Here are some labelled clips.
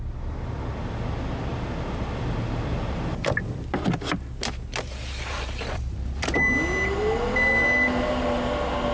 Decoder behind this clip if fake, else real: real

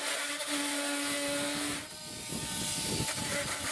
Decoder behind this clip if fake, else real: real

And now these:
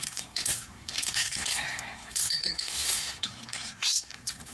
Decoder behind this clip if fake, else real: fake, codec, SNAC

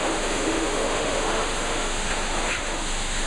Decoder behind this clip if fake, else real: fake, autoencoder, DAC-VAE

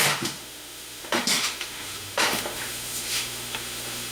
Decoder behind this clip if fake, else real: fake, autoencoder, DAC-VAE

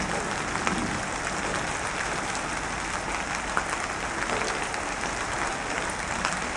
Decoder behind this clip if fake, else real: real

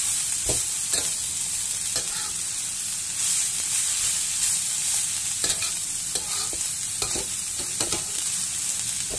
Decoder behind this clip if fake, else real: real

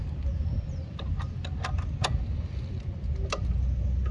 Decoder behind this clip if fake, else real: real